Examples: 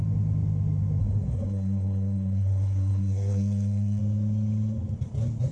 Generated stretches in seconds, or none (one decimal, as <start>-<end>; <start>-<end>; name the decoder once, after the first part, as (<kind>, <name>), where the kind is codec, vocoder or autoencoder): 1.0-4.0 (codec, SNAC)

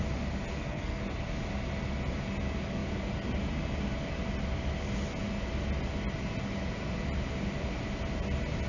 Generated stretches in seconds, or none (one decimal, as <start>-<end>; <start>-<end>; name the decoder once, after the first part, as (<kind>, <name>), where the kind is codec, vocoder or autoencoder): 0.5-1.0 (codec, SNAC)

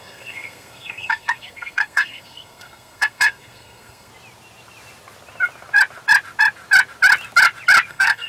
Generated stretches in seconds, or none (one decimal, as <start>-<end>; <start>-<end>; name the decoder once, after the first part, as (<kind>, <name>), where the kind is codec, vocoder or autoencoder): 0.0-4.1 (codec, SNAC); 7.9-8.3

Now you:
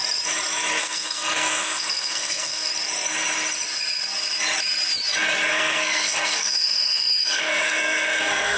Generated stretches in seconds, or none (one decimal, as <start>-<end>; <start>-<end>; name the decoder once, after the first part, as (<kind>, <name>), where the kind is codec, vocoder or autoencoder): 0.8-2.7 (codec, SNAC); 5.5-8.6